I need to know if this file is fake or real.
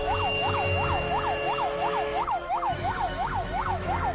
fake